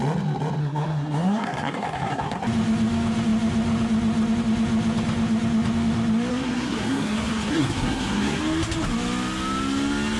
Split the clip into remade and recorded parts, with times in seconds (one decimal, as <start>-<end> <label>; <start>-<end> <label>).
0.0-0.6 recorded; 0.6-2.4 remade; 2.4-6.3 recorded; 6.3-8.4 remade; 8.4-10.2 recorded

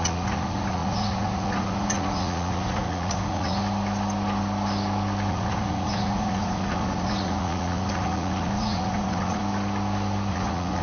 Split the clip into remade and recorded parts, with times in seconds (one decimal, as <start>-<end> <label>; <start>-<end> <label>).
0.0-3.6 remade; 3.6-5.3 recorded; 5.3-9.4 remade; 9.4-10.3 recorded; 10.3-10.8 remade